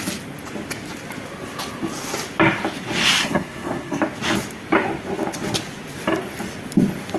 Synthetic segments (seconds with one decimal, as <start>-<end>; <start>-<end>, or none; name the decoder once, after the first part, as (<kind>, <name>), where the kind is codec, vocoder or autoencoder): 3.2-4.0 (codec, SNAC)